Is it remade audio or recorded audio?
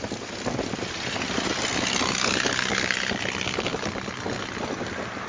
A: recorded